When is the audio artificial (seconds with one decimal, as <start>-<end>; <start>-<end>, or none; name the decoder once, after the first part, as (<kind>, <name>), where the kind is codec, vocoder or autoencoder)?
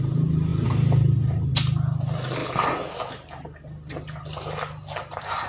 0.5-1.5 (vocoder, BigVGAN v2)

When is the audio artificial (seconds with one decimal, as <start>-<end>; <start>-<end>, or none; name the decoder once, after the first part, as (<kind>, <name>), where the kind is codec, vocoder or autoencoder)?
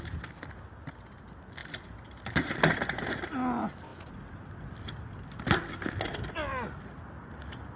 none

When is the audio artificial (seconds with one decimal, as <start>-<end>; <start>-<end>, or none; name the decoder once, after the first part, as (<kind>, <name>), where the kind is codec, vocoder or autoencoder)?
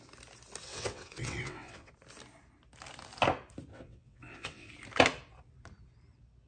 0.6-1.9 (vocoder, WaveNeXt); 3.7-4.7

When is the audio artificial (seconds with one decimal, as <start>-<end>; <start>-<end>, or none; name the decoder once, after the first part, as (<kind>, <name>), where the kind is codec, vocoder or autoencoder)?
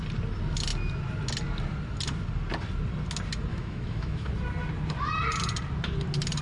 3.5-4.3 (autoencoder, DAC-VAE)